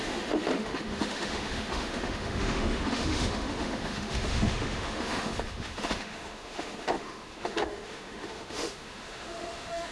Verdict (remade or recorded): remade